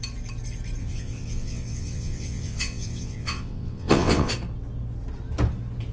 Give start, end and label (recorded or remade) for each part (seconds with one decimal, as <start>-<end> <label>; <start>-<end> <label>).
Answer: 0.0-0.8 recorded; 0.8-4.3 remade; 4.3-5.9 recorded